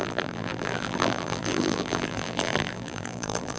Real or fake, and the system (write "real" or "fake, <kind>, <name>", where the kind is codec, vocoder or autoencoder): fake, vocoder, BigVGAN v2